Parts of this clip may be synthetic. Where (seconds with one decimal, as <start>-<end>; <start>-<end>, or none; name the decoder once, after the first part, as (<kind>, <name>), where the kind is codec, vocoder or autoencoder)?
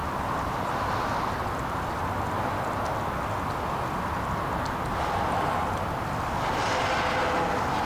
0.0-0.7 (vocoder, BigVGAN v2)